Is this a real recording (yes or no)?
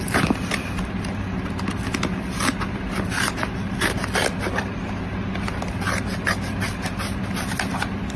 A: yes